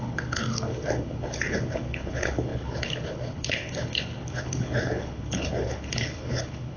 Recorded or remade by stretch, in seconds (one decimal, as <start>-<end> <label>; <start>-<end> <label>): 0.0-6.8 remade